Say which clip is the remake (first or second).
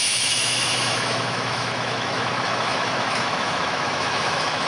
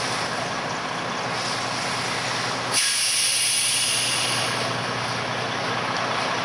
first